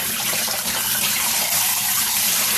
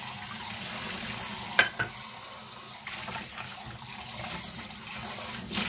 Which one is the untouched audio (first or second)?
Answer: second